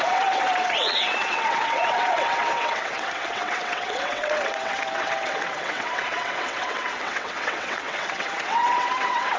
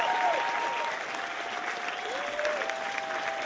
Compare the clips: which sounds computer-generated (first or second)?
first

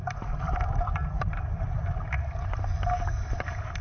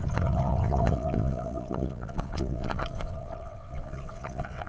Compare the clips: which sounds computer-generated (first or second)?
second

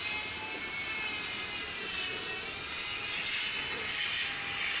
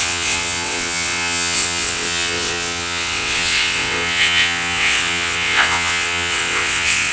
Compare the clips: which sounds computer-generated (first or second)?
second